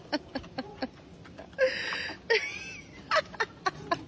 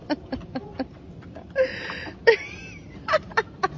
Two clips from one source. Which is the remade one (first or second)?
second